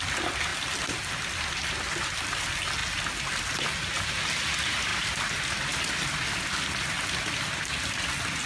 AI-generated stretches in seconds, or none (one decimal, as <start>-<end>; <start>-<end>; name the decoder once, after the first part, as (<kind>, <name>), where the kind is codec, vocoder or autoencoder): none